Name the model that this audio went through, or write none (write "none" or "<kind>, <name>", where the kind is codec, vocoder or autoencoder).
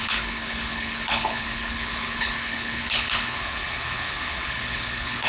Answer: codec, HILCodec